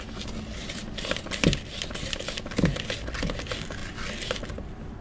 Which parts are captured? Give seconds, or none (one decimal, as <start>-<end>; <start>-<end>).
0.0-0.6; 1.1-1.7; 2.6-3.8; 4.4-5.0